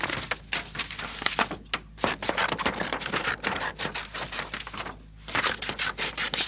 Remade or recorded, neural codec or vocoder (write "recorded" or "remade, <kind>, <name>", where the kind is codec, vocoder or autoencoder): recorded